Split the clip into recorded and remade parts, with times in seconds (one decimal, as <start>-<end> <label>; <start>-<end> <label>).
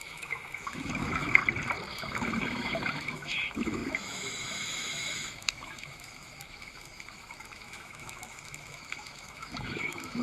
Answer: 0.0-1.4 remade; 1.4-1.9 recorded; 1.9-10.2 remade